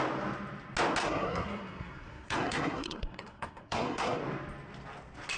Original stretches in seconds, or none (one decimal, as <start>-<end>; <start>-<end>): 0.0-1.0; 4.2-5.4

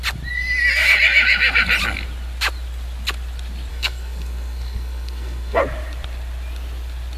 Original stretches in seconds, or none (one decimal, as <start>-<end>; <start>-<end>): 0.0-3.7; 5.6-7.2